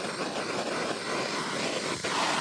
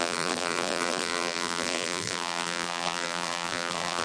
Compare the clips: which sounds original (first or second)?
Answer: first